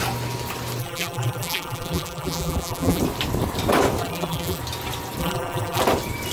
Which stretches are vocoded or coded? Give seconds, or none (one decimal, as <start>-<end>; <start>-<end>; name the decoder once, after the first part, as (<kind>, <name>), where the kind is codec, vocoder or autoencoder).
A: 0.8-3.0 (vocoder, BigVGAN v2); 4.0-4.6; 5.2-5.8